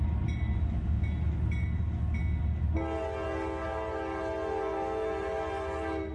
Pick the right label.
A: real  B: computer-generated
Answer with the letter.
A